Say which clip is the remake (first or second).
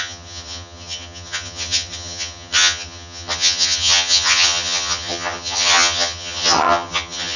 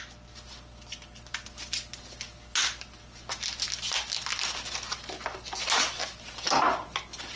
first